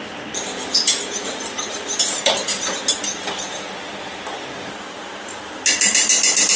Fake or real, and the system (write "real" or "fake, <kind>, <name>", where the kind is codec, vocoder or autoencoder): real